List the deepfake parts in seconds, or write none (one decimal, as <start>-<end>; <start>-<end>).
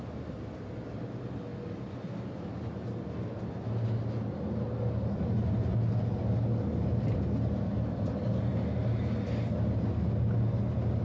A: none